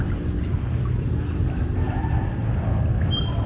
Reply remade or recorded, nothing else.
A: recorded